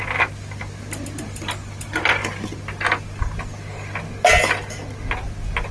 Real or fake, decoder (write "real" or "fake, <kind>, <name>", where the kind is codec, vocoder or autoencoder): real